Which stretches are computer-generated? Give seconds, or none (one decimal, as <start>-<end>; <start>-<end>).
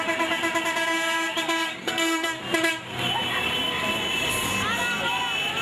1.8-2.4